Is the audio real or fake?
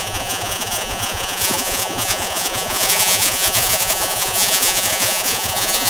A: fake